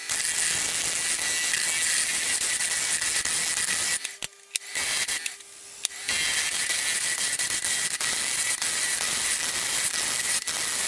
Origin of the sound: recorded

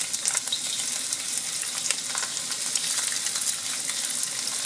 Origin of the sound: recorded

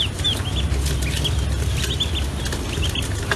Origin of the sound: recorded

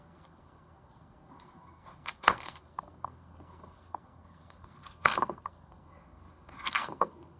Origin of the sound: remade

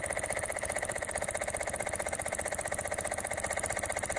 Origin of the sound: recorded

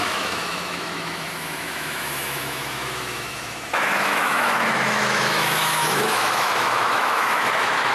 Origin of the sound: remade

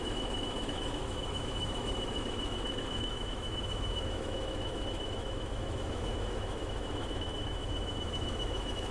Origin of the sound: remade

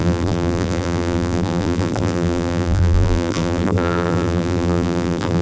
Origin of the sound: remade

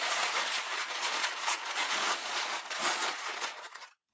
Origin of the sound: remade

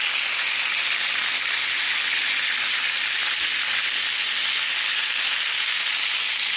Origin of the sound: recorded